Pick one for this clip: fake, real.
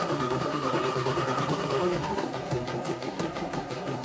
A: fake